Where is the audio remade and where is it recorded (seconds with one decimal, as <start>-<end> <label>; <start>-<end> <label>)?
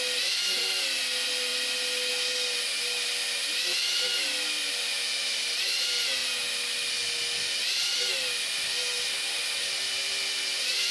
0.0-10.9 recorded